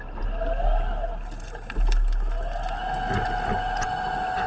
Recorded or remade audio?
recorded